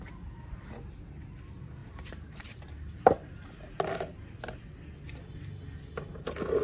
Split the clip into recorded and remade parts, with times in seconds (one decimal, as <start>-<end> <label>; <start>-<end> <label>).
0.0-1.8 recorded; 1.8-3.6 remade; 3.6-6.6 recorded